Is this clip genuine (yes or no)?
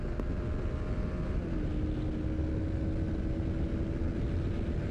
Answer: yes